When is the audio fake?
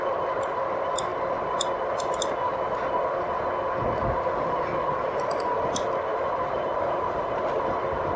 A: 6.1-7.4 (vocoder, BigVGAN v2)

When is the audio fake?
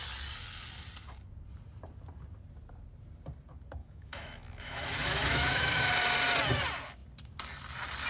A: 3.8-5.9 (autoencoder, DAC-VAE)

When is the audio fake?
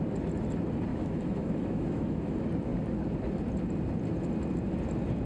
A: 0.9-2.3 (autoencoder, DAC-VAE)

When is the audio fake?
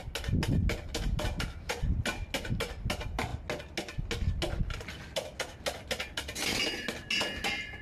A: none